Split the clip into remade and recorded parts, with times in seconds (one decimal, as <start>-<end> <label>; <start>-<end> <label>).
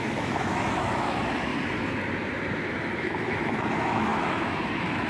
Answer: 0.0-1.5 remade; 1.5-3.0 recorded; 3.0-5.1 remade